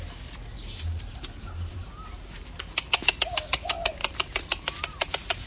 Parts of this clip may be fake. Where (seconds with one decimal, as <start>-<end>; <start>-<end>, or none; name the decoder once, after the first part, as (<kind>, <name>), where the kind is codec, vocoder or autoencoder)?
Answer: 0.5-3.1 (vocoder, BigVGAN v2)